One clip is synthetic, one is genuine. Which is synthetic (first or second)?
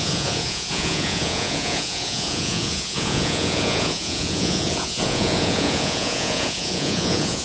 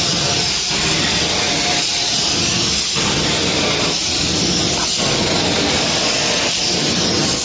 first